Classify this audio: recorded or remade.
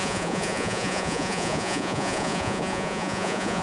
remade